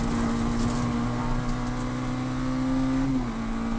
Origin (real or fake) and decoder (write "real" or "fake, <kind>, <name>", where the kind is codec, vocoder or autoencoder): real